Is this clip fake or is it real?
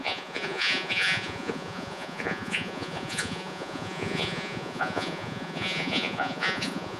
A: fake